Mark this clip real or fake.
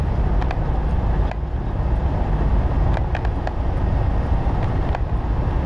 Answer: real